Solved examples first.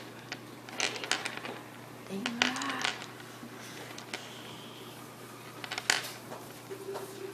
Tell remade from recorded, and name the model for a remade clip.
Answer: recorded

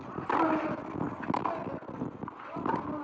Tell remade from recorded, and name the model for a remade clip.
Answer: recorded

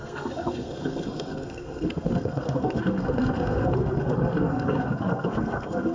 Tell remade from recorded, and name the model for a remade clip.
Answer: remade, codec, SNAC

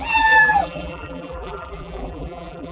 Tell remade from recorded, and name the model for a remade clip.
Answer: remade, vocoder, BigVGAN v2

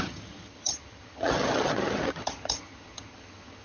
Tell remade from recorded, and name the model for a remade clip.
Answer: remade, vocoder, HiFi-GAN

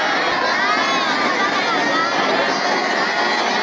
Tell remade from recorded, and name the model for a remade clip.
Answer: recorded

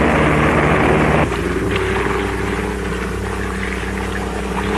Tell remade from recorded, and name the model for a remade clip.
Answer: recorded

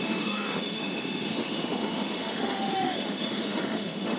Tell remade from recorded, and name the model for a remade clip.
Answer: remade, autoencoder, DAC-VAE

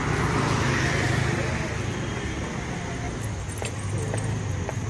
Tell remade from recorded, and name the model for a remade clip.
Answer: recorded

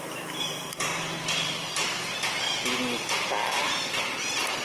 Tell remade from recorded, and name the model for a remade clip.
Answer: recorded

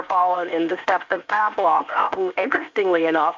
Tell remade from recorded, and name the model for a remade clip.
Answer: remade, codec, ZipCodec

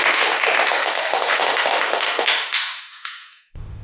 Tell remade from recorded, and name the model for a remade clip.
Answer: remade, autoencoder, DAC-VAE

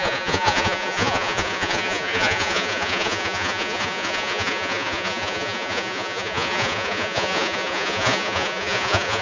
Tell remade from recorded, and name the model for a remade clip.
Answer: remade, vocoder, Vocos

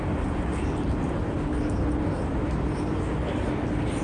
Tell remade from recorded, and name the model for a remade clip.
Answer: recorded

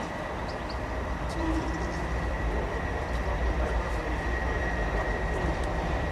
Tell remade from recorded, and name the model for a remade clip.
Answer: remade, vocoder, BigVGAN v2